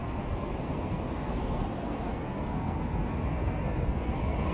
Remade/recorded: remade